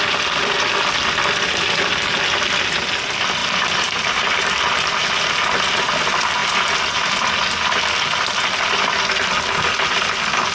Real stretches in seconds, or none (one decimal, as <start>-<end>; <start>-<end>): 0.0-3.4; 5.9-10.5